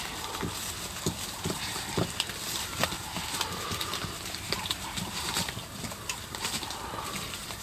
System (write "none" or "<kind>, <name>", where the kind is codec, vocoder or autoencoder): none